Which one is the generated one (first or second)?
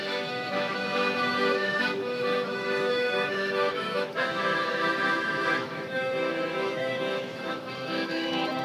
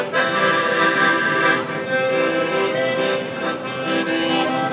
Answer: first